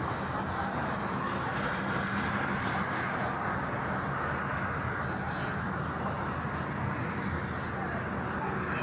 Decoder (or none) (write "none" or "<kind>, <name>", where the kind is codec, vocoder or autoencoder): none